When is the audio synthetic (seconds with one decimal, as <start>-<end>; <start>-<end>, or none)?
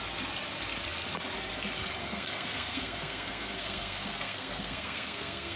2.0-5.6